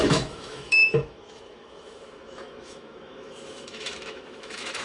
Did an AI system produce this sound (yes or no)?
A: yes